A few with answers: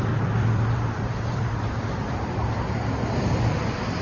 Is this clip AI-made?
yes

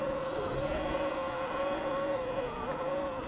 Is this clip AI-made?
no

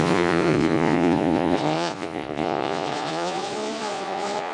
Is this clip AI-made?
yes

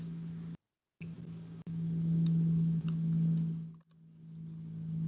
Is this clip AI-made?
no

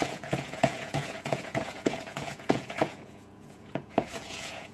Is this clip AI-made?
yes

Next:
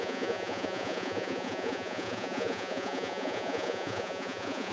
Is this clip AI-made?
yes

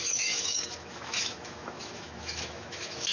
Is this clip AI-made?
yes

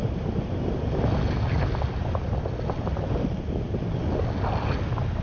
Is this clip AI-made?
no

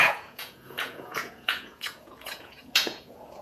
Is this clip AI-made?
yes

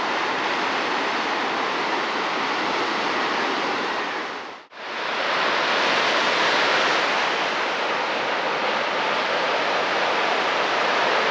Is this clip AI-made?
no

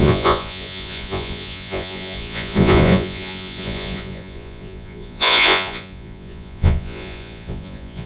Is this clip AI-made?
yes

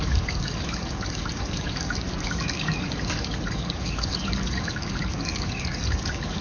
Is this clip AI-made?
yes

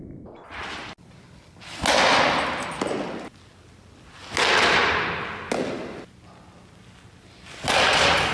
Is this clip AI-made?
no